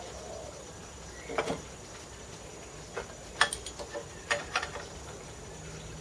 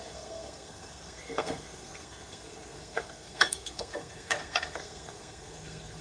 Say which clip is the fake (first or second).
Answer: second